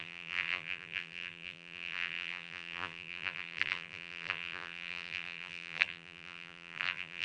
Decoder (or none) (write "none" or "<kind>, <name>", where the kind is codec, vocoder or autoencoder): vocoder, BigVGAN v2